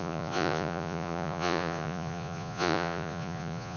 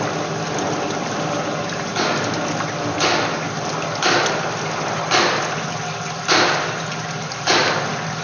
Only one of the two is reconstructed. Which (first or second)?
first